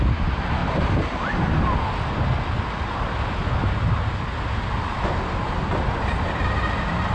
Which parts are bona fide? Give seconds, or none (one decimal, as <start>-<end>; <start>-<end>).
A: 0.0-7.1